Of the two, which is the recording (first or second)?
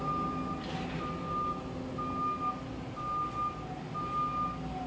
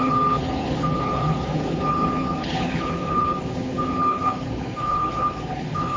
first